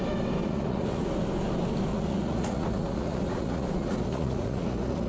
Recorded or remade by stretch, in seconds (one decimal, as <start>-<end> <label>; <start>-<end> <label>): 0.0-0.4 recorded; 0.4-1.1 remade; 1.1-1.9 recorded; 1.9-5.1 remade